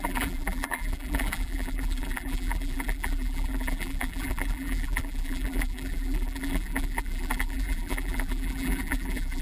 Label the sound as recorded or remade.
remade